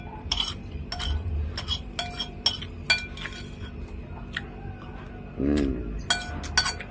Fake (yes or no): no